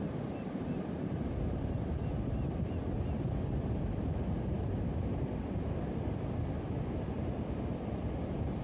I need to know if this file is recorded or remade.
recorded